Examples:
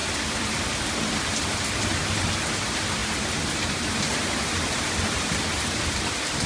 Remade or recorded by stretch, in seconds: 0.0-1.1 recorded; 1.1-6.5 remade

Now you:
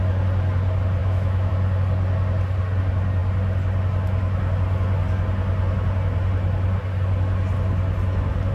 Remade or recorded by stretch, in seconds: 0.0-1.0 recorded; 1.0-1.5 remade; 1.5-8.5 recorded

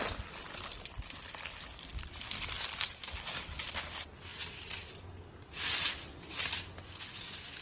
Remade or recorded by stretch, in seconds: 0.0-7.6 recorded

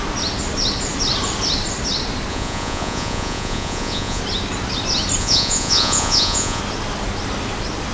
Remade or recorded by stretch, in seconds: 0.0-2.3 recorded; 2.3-4.2 remade; 4.2-5.2 recorded; 5.2-6.6 remade; 6.6-7.9 recorded

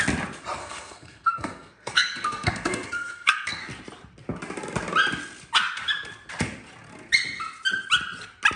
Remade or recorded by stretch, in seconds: 0.0-0.6 recorded; 0.6-3.6 remade; 3.6-8.6 recorded

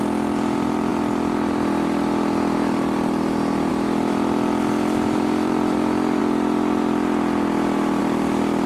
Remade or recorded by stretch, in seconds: 0.0-6.2 remade; 6.2-8.0 recorded; 8.0-8.7 remade

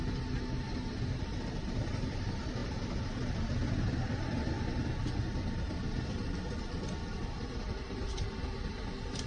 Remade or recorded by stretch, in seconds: 0.0-9.3 recorded

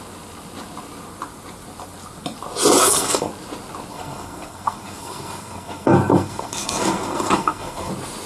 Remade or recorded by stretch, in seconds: 0.0-2.8 recorded; 2.8-3.3 remade; 3.3-3.9 recorded; 3.9-7.9 remade; 7.9-8.3 recorded